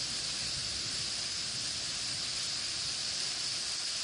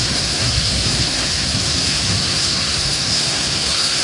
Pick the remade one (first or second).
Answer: second